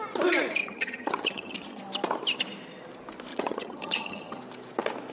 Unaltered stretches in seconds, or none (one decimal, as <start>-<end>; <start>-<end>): 0.0-0.6; 1.8-3.3; 4.4-5.1